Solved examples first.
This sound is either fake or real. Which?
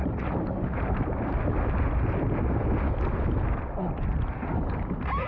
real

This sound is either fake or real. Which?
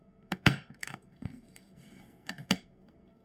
fake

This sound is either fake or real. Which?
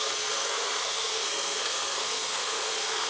fake